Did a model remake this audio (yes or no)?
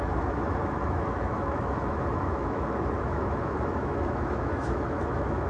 yes